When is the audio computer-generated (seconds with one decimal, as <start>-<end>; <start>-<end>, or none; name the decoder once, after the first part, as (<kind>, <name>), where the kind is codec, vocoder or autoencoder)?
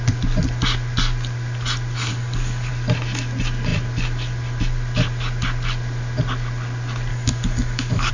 2.1-2.7 (codec, DAC); 7.1-8.1